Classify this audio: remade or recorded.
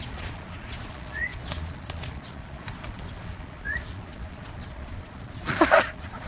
remade